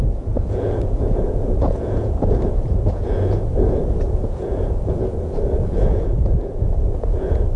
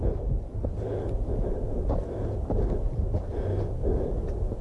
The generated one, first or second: first